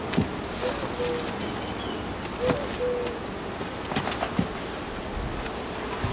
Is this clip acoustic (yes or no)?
yes